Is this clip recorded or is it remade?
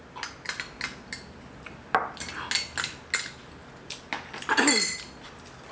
recorded